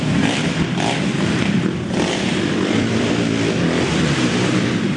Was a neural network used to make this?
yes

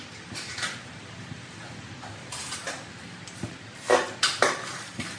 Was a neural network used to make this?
no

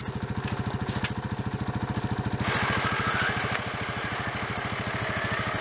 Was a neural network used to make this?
no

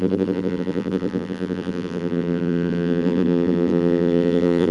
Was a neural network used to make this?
yes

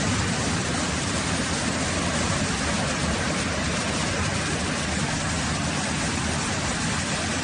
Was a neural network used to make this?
yes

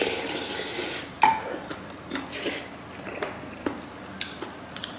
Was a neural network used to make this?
yes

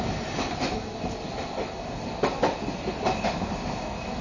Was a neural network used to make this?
no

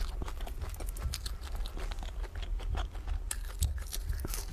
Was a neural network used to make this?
no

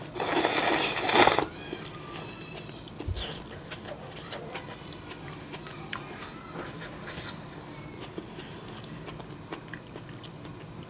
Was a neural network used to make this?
no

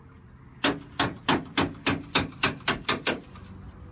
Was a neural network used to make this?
no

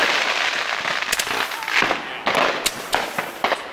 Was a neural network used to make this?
no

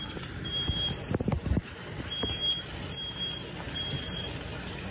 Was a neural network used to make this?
yes